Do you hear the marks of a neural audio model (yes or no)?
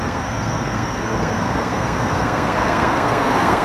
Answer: yes